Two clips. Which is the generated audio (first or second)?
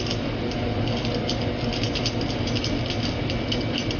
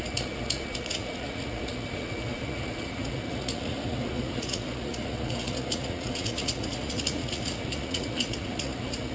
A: second